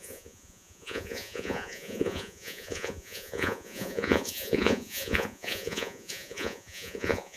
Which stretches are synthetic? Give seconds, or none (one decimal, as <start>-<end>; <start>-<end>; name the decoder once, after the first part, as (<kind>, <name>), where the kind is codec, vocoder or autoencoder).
0.0-7.4 (vocoder, Vocos)